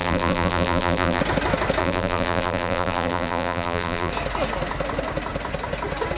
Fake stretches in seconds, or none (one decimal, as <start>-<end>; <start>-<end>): 0.0-1.2; 1.8-4.1